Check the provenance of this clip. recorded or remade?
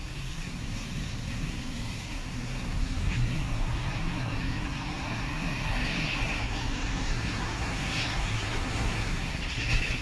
remade